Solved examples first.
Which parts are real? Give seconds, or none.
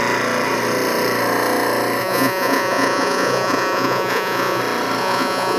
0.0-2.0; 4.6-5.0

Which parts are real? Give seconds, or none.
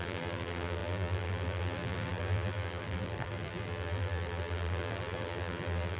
none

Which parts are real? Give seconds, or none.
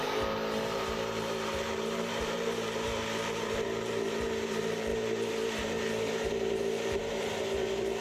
none